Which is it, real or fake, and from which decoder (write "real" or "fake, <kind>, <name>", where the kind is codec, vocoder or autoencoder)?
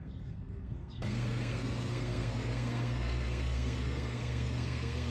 fake, codec, SNAC